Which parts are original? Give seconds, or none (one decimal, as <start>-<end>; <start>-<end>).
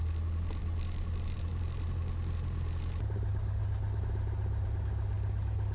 0.0-5.7